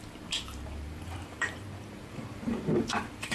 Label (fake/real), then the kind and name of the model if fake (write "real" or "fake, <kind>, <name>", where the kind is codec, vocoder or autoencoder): fake, vocoder, BigVGAN v2